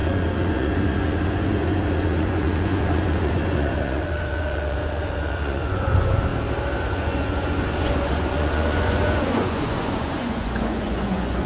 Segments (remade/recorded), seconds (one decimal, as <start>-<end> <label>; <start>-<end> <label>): 0.0-6.3 remade; 6.3-6.8 recorded; 6.8-11.5 remade